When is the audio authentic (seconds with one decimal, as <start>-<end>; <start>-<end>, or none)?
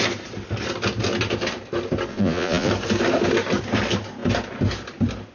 0.0-2.1; 2.7-5.3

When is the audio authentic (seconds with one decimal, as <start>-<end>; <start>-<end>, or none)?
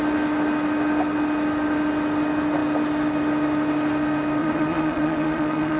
0.0-4.4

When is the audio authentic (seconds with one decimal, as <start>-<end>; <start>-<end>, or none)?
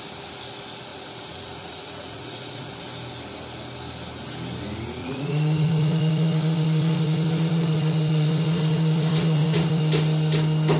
0.0-0.9; 2.7-5.0; 9.8-10.8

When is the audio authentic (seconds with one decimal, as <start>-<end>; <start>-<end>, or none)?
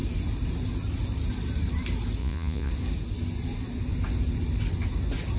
0.0-2.2; 2.7-5.4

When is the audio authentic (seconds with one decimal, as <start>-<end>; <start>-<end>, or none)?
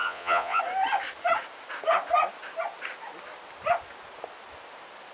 0.6-5.1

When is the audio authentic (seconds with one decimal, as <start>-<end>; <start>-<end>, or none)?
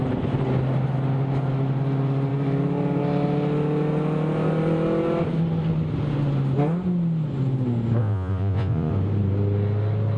0.0-8.0; 8.9-10.2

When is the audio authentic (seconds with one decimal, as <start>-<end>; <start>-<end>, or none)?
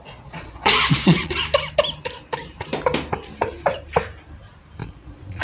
1.3-4.8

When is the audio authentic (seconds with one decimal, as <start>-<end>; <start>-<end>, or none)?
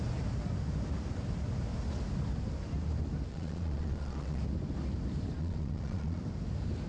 0.0-3.3; 4.4-5.4; 6.2-6.9